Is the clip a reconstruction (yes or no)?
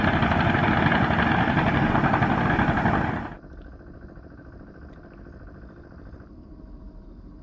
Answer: no